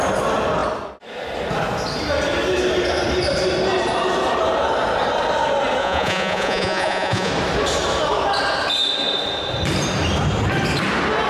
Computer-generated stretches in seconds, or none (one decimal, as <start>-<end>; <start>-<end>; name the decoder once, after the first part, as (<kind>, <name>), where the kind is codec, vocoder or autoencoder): 5.8-7.3 (vocoder, Vocos)